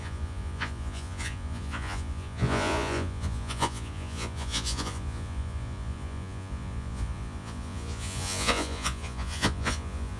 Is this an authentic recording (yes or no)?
no